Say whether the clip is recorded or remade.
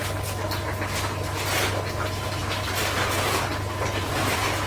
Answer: recorded